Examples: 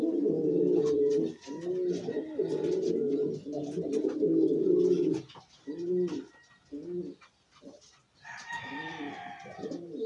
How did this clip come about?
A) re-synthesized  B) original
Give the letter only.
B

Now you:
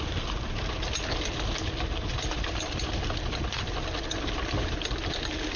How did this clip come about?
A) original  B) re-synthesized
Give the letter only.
A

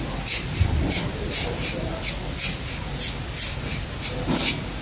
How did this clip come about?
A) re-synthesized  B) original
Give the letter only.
A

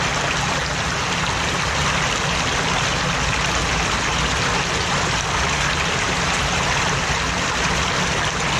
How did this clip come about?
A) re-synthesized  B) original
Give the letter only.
B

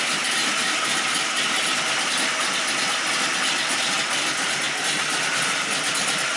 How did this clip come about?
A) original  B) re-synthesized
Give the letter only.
A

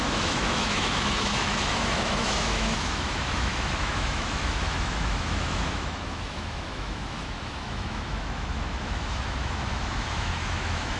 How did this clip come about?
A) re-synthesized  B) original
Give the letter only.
A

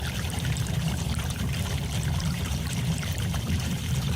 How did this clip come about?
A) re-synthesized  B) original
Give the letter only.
A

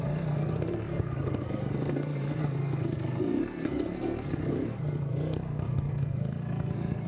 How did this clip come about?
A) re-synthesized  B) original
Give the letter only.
A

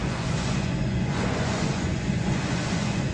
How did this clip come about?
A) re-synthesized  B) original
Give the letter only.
A